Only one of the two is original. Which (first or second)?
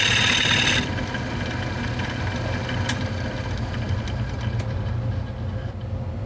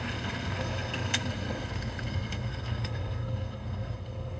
first